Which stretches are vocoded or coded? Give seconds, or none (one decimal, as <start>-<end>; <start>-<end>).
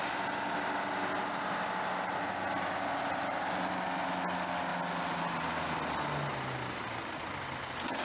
none